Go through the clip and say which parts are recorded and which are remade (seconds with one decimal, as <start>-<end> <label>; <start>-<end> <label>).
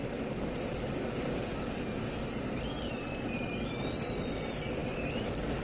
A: 0.0-5.6 recorded